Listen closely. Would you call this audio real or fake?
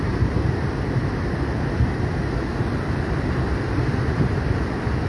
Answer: real